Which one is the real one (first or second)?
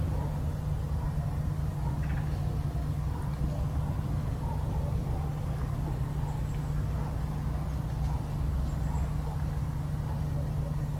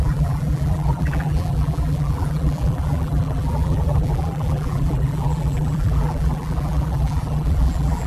first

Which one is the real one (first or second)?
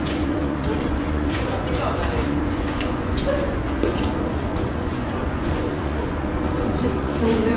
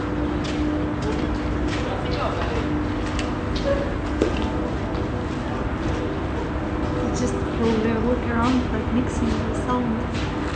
second